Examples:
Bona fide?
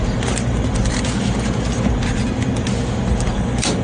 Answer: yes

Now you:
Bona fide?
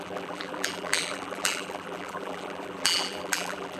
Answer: no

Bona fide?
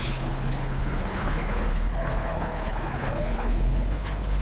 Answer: no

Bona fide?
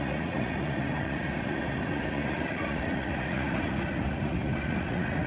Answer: no